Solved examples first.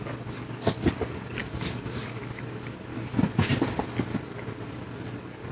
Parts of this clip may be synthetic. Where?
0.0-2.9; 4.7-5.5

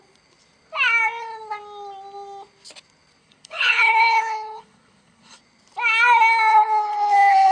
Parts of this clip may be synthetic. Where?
3.2-5.4; 6.5-7.5

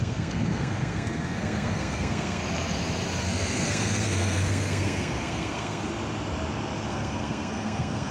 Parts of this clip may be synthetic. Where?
0.0-2.4; 3.2-5.9; 6.9-8.1

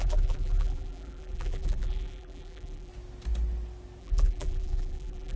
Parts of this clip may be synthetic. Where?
0.0-2.9; 4.0-5.4